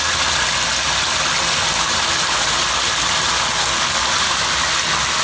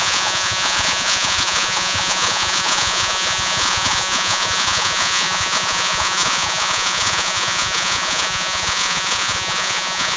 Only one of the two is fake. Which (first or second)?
second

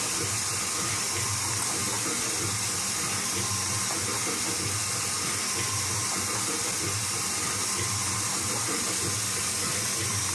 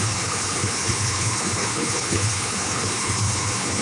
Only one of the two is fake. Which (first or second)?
second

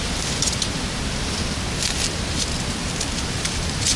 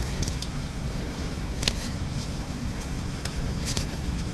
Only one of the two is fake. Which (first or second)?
second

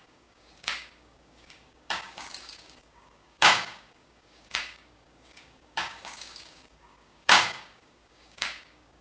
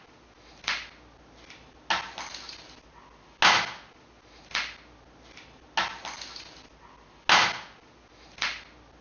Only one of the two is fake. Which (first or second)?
first